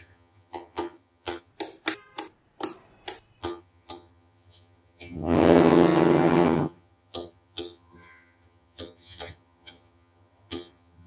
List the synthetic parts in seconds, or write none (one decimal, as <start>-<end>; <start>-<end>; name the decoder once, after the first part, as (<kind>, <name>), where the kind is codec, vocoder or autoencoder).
0.0-1.5 (vocoder, HiFi-GAN); 3.4-11.1